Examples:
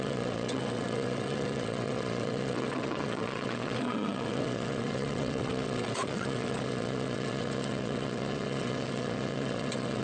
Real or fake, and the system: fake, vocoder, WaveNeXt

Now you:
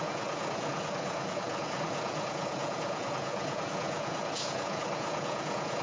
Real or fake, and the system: fake, vocoder, Vocos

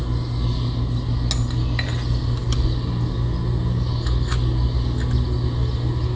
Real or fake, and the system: real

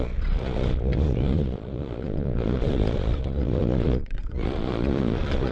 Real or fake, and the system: fake, vocoder, Vocos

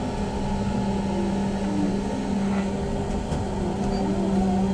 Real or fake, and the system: real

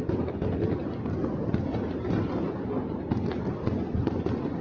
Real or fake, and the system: real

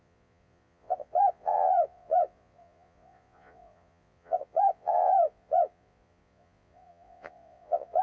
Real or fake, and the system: fake, vocoder, Vocos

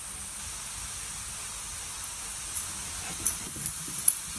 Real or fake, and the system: real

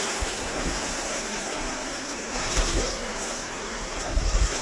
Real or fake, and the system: fake, codec, SNAC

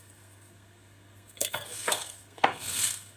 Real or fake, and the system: fake, codec, SNAC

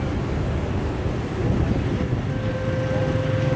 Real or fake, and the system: real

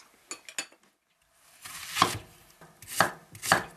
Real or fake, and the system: real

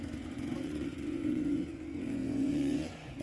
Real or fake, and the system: fake, vocoder, Vocos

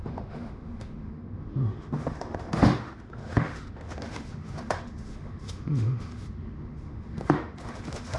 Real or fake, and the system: fake, autoencoder, DAC-VAE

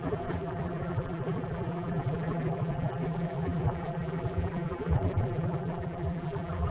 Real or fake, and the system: fake, vocoder, BigVGAN v2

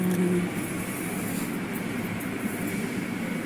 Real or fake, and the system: real